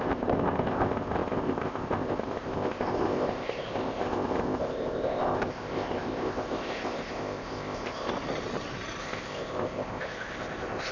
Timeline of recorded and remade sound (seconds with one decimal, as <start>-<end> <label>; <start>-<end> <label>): 0.0-8.1 remade; 8.1-9.0 recorded; 9.0-10.9 remade